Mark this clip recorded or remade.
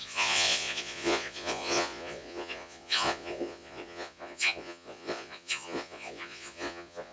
remade